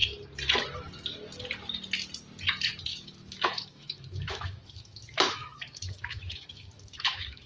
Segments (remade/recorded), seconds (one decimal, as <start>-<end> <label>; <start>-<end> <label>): 0.0-2.9 recorded; 2.9-7.5 remade